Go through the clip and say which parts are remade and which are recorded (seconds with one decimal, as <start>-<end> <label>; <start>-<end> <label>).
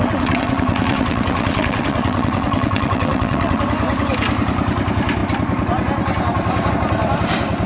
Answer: 0.0-3.6 remade; 3.6-7.7 recorded